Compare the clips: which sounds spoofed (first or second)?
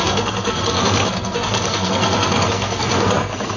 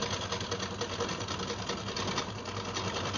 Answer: first